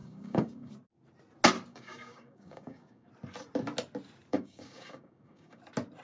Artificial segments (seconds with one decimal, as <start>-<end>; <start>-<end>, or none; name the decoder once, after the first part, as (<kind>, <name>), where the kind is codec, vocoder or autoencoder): 0.0-0.7 (codec, DAC); 1.7-3.1; 4.3-5.6